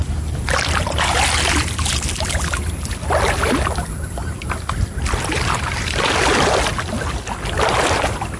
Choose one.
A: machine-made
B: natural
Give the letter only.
B